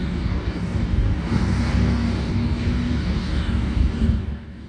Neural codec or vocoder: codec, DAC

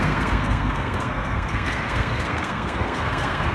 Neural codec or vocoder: codec, SNAC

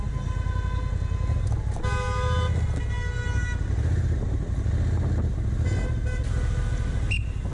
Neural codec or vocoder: none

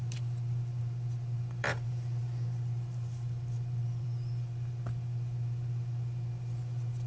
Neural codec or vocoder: vocoder, BigVGAN v2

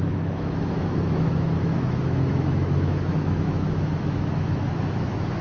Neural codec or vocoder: autoencoder, DAC-VAE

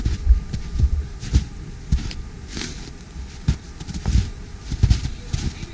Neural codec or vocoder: none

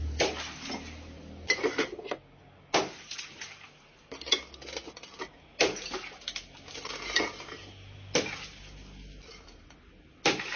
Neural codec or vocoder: none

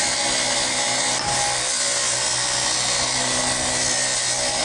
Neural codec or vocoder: none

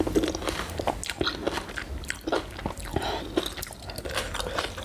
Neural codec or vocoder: none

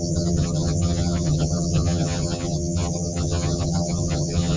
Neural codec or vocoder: vocoder, HiFi-GAN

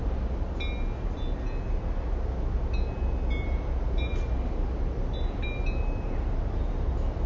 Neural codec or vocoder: none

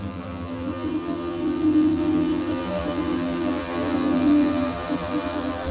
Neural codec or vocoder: vocoder, BigVGAN v2